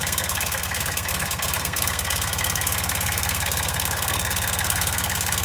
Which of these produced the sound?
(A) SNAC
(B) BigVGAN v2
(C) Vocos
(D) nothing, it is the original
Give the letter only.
A